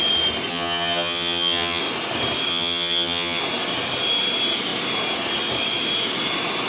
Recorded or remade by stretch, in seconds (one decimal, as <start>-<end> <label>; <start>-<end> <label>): 0.0-0.5 recorded; 0.5-1.8 remade; 1.8-2.5 recorded; 2.5-3.4 remade; 3.4-6.7 recorded